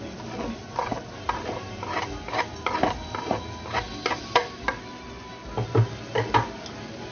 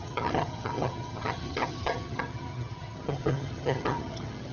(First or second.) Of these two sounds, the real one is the first